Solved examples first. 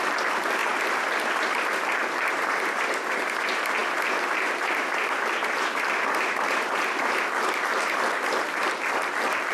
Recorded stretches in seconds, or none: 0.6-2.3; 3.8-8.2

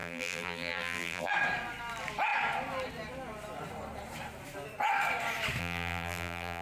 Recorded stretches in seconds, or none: 1.3-5.6

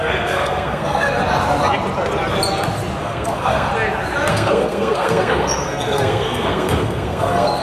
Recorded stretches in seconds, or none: 1.2-3.0; 3.7-4.3